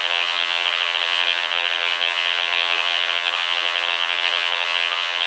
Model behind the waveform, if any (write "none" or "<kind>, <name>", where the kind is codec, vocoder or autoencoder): vocoder, HiFi-GAN